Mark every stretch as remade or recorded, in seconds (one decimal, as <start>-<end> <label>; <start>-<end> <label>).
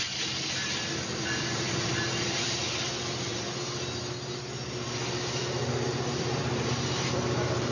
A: 0.0-3.3 remade; 3.3-6.1 recorded; 6.1-7.7 remade